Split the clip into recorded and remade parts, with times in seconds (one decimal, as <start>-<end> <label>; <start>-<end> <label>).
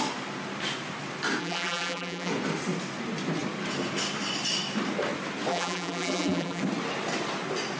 0.0-1.4 recorded; 1.4-2.3 remade; 2.3-5.5 recorded; 5.5-6.6 remade; 6.6-7.8 recorded